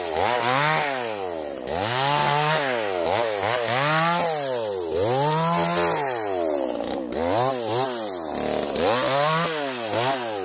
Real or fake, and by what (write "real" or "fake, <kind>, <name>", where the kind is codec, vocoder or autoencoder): real